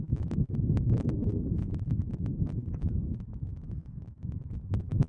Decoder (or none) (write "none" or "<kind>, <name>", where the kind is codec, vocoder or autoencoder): autoencoder, DAC-VAE